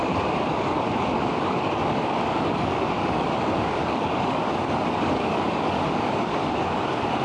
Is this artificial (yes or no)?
yes